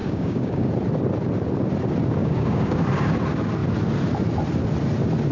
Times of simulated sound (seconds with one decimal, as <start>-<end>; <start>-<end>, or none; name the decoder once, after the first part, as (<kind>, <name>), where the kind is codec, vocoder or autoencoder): 0.0-0.7 (codec, DAC); 2.2-2.8